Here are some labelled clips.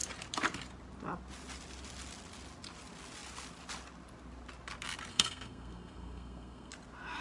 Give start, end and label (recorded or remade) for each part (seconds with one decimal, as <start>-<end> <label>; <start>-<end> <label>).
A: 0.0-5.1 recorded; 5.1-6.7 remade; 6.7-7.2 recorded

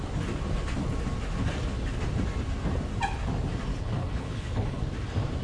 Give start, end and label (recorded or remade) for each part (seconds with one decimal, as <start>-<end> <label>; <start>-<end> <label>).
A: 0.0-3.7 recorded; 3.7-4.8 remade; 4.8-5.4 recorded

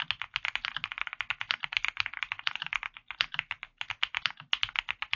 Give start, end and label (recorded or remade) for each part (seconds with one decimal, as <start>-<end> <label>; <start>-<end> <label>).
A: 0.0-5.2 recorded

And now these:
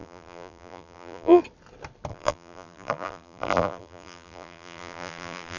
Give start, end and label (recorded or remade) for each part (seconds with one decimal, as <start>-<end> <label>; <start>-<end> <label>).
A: 0.0-1.4 remade; 1.4-2.1 recorded; 2.1-5.6 remade

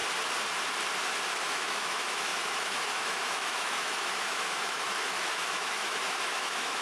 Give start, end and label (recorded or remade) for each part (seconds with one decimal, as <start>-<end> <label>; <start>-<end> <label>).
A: 0.0-1.4 recorded; 1.4-6.8 remade